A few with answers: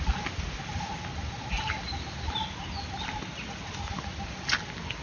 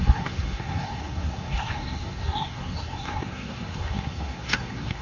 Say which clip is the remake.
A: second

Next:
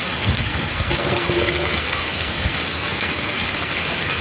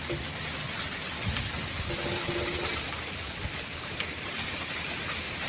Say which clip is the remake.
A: first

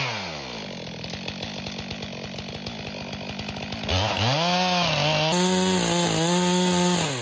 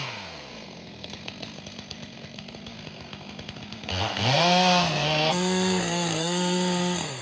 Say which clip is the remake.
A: second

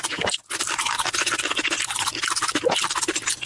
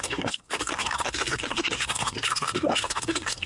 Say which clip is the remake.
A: second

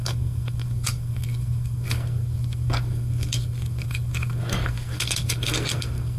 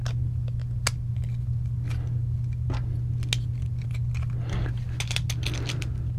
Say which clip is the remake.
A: first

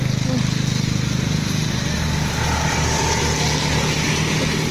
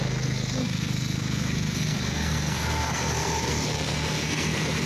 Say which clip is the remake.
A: second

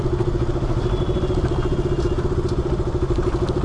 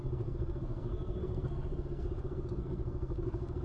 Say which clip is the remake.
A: second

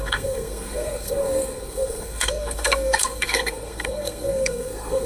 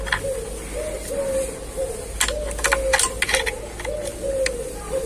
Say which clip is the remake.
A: first